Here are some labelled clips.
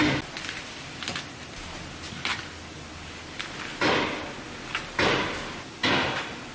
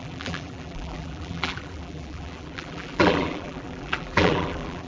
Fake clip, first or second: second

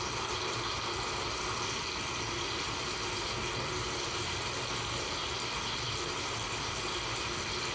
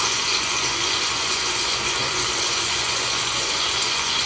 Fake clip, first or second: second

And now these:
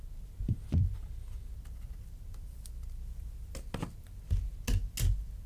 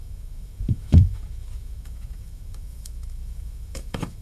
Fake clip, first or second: second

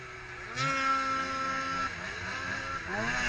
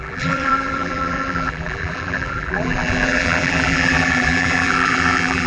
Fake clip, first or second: second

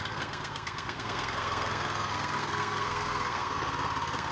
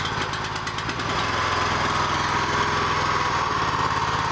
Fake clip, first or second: first